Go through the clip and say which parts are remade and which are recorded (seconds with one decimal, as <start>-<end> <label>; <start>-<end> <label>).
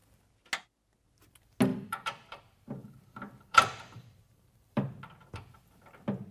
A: 0.0-1.7 recorded; 1.7-2.4 remade; 2.4-2.8 recorded; 2.8-4.9 remade; 4.9-6.3 recorded